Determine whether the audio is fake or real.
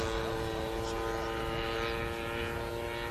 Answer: real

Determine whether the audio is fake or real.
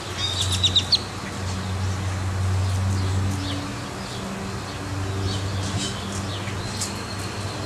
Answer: real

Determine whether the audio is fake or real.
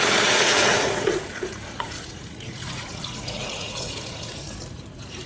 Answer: fake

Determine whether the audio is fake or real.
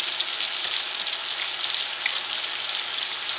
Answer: real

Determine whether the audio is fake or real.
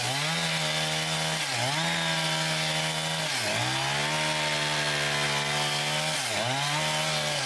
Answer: real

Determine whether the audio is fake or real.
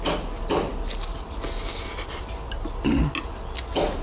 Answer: real